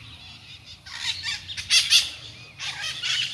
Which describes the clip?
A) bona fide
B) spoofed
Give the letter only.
A